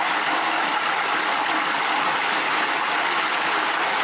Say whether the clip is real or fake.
real